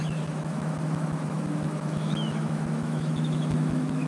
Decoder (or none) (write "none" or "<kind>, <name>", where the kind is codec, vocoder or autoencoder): autoencoder, DAC-VAE